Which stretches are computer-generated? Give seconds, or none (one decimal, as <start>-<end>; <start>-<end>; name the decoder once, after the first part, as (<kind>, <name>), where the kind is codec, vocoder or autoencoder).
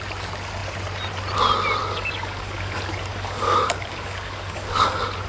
1.8-5.3 (codec, DAC)